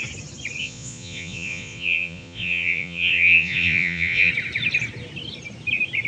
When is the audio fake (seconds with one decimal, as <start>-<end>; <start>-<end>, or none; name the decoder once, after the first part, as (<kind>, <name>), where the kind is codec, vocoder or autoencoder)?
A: 0.6-4.3 (vocoder, Vocos)